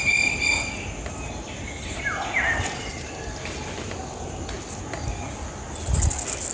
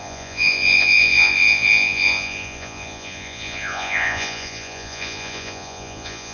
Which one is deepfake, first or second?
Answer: second